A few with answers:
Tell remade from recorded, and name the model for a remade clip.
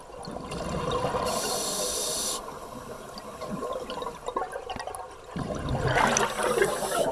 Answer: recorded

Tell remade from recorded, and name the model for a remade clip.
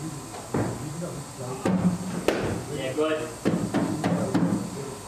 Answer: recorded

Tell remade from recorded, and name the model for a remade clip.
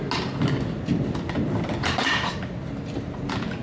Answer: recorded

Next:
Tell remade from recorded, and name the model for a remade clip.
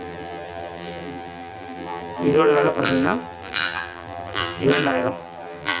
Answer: remade, vocoder, BigVGAN v2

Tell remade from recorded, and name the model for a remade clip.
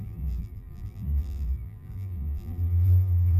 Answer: remade, vocoder, BigVGAN v2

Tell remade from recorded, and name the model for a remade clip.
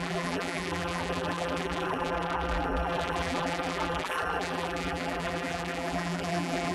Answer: remade, vocoder, BigVGAN v2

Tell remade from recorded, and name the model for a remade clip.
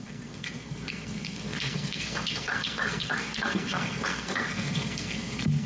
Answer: remade, codec, SNAC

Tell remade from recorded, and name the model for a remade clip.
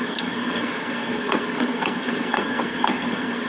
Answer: remade, codec, SNAC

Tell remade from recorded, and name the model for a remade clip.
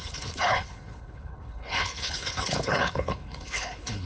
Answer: remade, codec, HILCodec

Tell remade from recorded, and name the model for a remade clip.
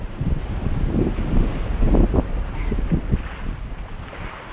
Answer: recorded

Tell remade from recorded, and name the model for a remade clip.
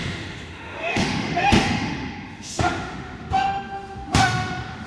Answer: remade, autoencoder, DAC-VAE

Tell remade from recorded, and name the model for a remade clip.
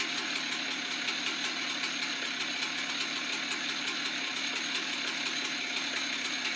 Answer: recorded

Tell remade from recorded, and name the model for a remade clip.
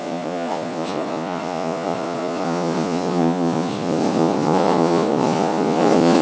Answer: remade, vocoder, Vocos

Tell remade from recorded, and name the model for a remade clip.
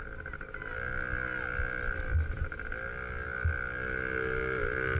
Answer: recorded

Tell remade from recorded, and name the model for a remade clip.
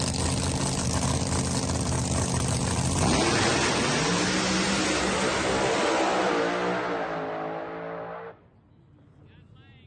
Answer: recorded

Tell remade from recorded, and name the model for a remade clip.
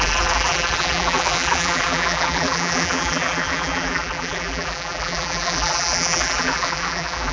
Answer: remade, vocoder, BigVGAN v2